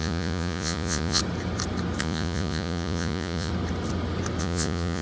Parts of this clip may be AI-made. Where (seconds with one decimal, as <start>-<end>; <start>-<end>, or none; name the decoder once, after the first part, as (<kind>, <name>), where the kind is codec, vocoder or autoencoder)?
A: 0.0-1.2 (vocoder, Vocos); 2.0-3.5; 4.4-5.0